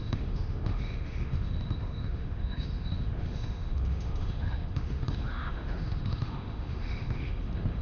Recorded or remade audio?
remade